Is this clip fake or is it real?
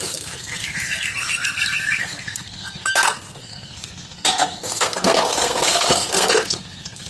fake